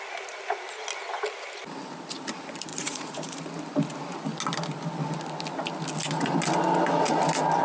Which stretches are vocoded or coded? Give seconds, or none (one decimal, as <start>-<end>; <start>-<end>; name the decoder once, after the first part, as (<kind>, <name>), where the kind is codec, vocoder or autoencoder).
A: 2.7-3.4 (vocoder, Vocos)